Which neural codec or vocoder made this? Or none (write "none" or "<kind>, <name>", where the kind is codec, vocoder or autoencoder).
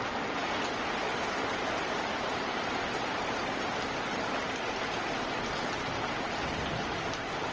none